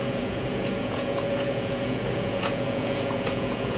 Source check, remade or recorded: remade